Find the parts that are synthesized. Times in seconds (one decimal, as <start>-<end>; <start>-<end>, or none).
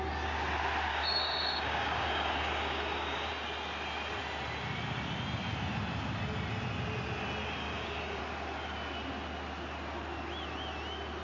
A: 0.9-3.3; 7.6-8.2